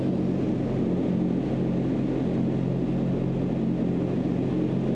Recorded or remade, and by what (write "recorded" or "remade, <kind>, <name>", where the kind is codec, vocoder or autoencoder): recorded